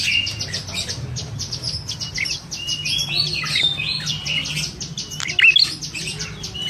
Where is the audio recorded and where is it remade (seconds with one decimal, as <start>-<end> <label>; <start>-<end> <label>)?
0.0-6.7 recorded